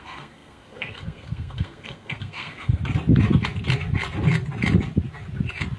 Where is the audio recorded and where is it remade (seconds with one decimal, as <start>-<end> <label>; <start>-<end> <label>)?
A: 0.0-2.8 remade; 2.8-5.8 recorded